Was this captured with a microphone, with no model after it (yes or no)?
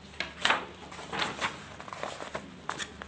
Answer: yes